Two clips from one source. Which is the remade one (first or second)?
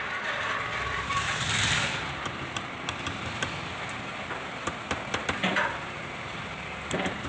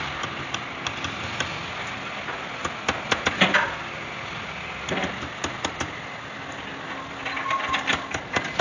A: first